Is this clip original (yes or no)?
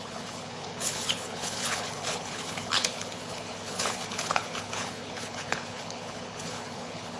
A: no